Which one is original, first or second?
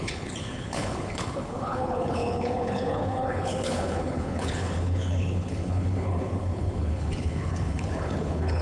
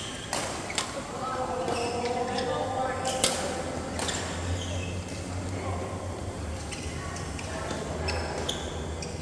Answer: second